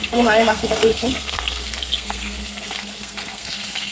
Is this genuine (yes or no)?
no